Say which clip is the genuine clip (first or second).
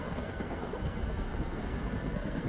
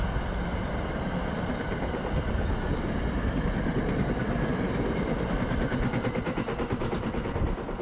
second